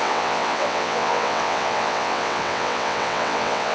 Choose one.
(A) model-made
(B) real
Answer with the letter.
A